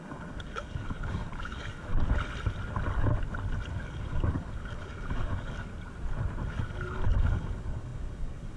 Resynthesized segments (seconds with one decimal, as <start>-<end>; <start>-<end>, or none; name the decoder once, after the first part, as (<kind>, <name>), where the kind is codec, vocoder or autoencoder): 0.0-1.9 (codec, DAC); 3.7-5.7; 6.5-8.6